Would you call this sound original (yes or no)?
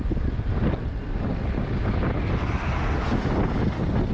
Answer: yes